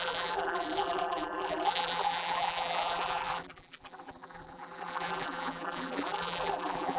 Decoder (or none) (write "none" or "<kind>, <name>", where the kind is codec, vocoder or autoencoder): vocoder, BigVGAN v2